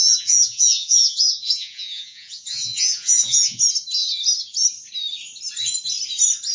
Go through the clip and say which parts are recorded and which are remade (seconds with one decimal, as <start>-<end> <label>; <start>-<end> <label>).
0.0-3.6 remade; 3.6-6.5 recorded